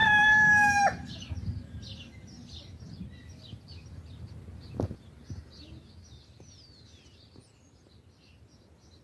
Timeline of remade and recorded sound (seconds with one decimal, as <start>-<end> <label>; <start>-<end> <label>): 0.0-0.8 remade; 0.8-9.0 recorded

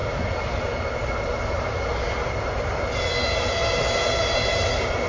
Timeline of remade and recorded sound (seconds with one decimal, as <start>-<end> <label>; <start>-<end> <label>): 0.0-5.1 recorded